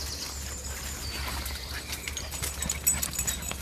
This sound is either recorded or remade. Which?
recorded